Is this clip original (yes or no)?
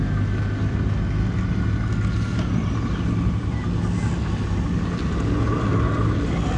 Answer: yes